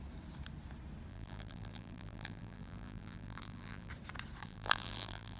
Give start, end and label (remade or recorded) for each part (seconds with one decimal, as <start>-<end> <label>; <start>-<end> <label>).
0.0-1.1 recorded; 1.1-3.9 remade; 3.9-4.4 recorded; 4.4-5.4 remade